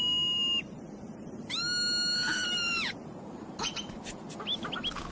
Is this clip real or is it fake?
real